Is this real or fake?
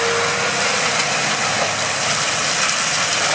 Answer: real